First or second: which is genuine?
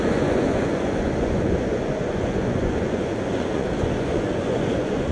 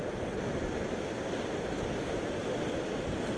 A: second